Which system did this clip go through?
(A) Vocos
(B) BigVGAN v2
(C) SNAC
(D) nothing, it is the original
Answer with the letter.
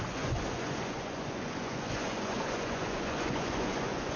A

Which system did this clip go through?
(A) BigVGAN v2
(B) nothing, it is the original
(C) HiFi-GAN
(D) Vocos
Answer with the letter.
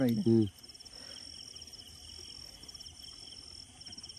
B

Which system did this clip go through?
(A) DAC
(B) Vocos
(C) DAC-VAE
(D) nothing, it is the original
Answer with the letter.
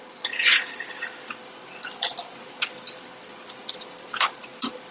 D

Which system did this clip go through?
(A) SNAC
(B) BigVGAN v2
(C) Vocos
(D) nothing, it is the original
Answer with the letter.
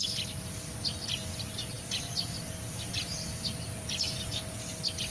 D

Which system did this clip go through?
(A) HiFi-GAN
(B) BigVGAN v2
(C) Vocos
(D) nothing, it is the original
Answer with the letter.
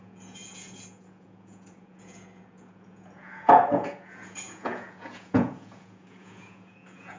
C